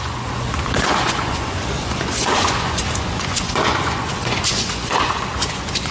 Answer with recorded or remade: remade